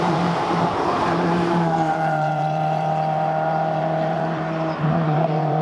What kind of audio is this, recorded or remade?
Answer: remade